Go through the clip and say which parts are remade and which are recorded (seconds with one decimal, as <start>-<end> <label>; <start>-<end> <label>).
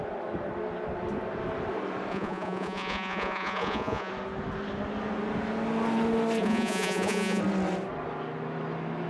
0.0-2.1 recorded; 2.1-4.1 remade; 4.1-6.4 recorded; 6.4-7.4 remade; 7.4-9.1 recorded